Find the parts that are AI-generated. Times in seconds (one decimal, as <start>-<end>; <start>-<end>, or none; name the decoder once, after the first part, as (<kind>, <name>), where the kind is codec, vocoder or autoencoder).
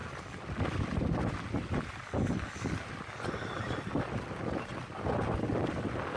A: none